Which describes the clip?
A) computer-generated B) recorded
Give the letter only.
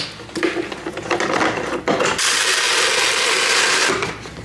B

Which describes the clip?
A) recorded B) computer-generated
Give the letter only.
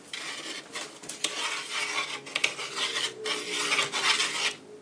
A